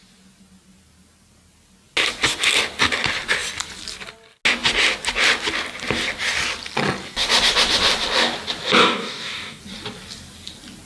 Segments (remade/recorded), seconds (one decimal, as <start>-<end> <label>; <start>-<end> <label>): 0.0-8.8 recorded; 8.8-9.6 remade; 9.6-10.9 recorded